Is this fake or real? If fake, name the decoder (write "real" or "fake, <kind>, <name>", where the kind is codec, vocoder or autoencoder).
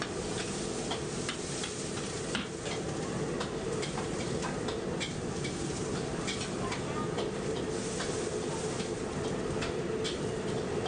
real